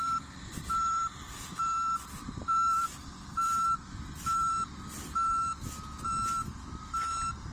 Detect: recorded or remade remade